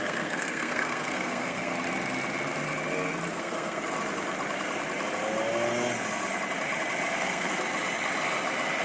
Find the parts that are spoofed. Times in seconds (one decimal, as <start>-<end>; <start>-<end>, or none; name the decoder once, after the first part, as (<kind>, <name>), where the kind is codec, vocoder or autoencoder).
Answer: 0.0-1.7 (codec, SNAC); 3.3-3.8; 7.1-7.6